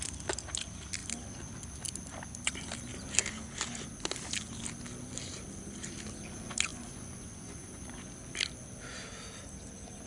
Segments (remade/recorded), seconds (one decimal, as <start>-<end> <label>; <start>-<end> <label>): 0.0-6.7 recorded; 6.7-7.9 remade; 7.9-10.1 recorded